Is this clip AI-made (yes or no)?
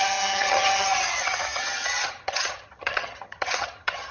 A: yes